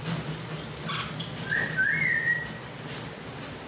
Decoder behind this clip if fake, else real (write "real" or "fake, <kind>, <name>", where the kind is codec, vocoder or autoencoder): real